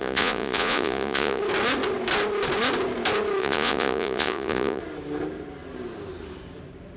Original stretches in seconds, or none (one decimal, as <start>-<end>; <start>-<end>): 1.4-3.4; 4.8-7.0